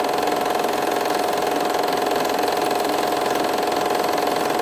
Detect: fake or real real